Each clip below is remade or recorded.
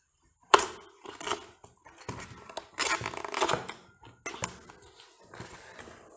recorded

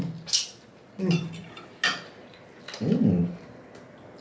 recorded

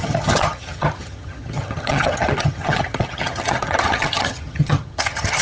remade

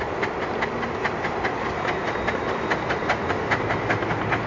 recorded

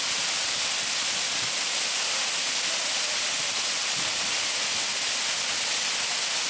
recorded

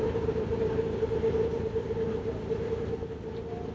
recorded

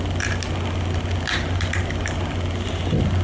recorded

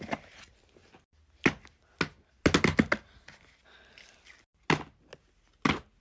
recorded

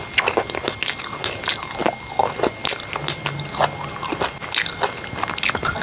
recorded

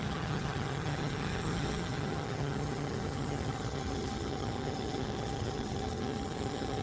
remade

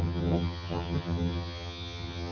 remade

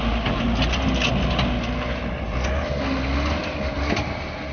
recorded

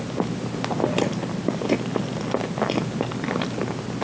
recorded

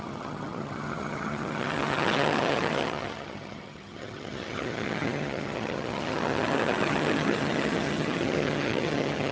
remade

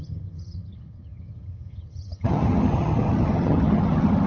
remade